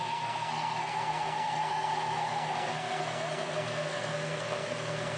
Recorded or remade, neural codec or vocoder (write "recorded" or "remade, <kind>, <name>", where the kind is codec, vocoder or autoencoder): remade, codec, SNAC